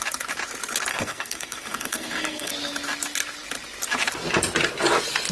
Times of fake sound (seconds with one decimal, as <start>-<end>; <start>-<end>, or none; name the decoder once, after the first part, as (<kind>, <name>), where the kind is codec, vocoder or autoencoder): 0.9-2.5 (codec, SNAC)